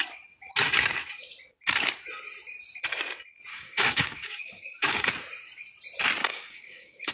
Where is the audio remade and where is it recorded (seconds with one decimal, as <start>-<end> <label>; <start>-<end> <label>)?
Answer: 0.0-3.5 recorded; 3.5-5.1 remade; 5.1-6.3 recorded; 6.3-7.1 remade

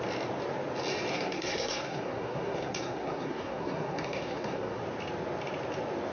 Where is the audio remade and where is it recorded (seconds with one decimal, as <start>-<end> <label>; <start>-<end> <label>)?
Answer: 0.0-1.1 recorded; 1.1-4.8 remade; 4.8-6.1 recorded

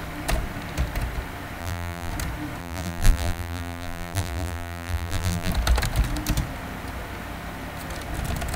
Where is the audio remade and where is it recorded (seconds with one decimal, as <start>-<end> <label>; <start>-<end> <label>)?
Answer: 0.0-1.6 recorded; 1.6-2.1 remade; 2.1-2.6 recorded; 2.6-5.5 remade; 5.5-8.6 recorded

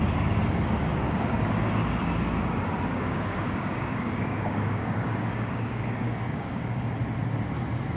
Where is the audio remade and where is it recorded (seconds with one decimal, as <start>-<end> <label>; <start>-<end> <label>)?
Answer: 0.0-0.9 recorded; 0.9-1.4 remade; 1.4-2.9 recorded; 2.9-7.0 remade; 7.0-8.0 recorded

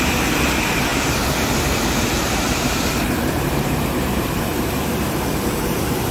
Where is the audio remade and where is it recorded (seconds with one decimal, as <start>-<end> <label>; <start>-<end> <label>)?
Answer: 0.0-6.1 remade

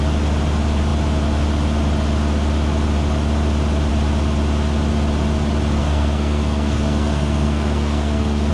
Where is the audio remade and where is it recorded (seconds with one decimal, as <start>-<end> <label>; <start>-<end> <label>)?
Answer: 0.0-5.8 recorded; 5.8-8.5 remade

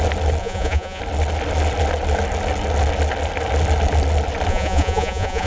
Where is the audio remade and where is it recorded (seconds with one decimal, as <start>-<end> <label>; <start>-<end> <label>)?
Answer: 0.0-0.4 recorded; 0.4-1.0 remade; 1.0-4.5 recorded; 4.5-5.5 remade

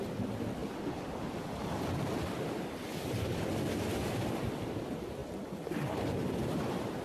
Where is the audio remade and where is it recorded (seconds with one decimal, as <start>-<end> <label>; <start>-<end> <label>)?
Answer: 0.0-7.0 recorded